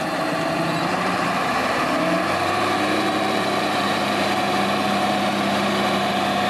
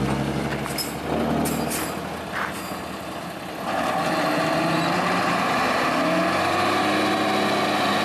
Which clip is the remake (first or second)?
first